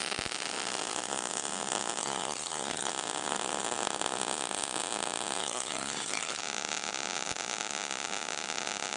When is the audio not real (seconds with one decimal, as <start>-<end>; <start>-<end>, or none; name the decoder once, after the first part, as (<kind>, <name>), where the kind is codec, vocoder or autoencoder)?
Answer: 2.0-2.9 (codec, SNAC); 5.4-6.4